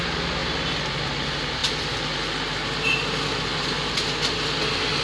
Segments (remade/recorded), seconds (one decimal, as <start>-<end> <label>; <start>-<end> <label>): 0.0-5.0 recorded